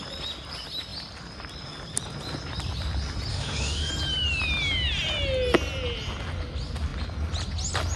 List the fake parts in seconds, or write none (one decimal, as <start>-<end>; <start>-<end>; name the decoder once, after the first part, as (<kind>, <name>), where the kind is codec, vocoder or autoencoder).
3.3-3.9 (autoencoder, DAC-VAE)